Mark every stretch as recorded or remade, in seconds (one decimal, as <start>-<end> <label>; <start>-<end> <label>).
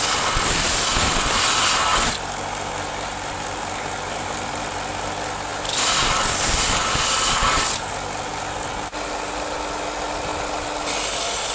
0.0-11.5 recorded